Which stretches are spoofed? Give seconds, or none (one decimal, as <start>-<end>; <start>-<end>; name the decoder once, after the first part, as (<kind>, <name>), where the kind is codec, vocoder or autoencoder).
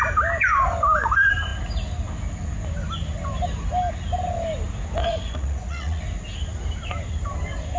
5.0-6.0 (vocoder, Vocos)